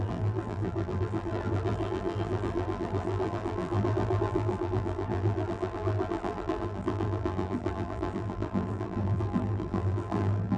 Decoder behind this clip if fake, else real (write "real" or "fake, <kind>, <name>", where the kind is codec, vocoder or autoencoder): fake, vocoder, BigVGAN v2